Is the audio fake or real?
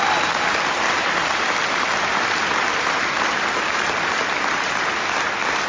real